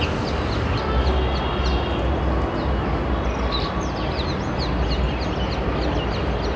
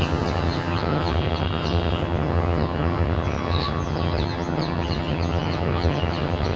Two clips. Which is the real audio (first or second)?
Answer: first